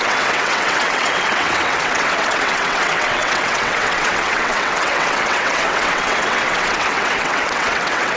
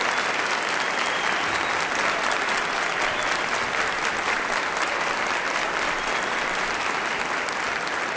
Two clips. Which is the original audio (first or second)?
second